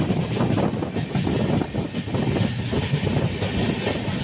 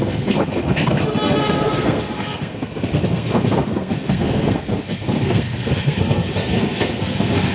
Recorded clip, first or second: first